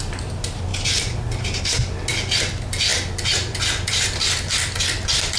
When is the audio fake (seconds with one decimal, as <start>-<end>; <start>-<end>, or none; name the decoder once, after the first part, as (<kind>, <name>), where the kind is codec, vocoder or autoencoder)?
none